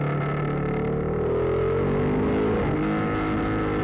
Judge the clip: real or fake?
real